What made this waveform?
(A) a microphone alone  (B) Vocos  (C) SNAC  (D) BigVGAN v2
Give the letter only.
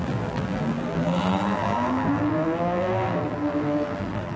D